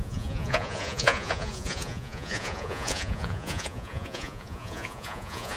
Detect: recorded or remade remade